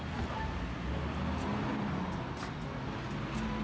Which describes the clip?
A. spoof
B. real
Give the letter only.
B